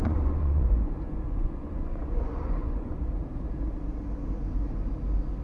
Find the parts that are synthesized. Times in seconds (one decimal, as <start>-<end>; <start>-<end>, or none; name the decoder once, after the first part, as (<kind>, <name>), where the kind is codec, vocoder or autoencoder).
0.0-3.2 (vocoder, Vocos)